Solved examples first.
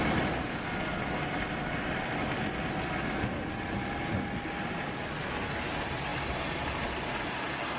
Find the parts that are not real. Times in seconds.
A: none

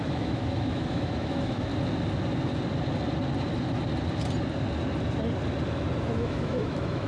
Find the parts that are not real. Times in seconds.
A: 0.0-1.7 (autoencoder, DAC-VAE); 6.0-7.1

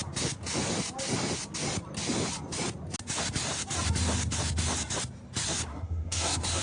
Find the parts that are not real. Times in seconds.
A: 5.7-6.6 (codec, SNAC)

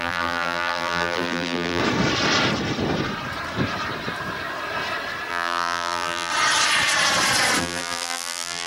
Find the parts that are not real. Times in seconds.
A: 0.0-1.8 (vocoder, BigVGAN v2); 5.3-6.3; 7.6-8.7

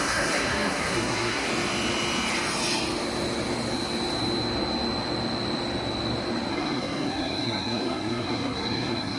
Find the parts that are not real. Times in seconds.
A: 0.0-1.5 (codec, SNAC); 6.5-9.2

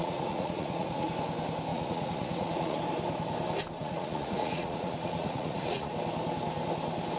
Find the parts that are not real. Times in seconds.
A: 0.0-1.1 (vocoder, Vocos); 1.7-2.8; 3.8-5.9

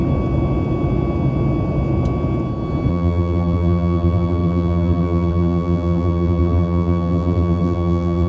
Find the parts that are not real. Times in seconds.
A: 2.9-8.3 (vocoder, BigVGAN v2)